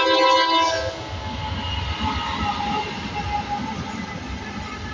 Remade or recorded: recorded